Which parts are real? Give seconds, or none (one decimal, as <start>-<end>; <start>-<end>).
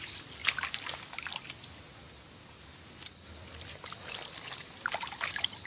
0.0-5.7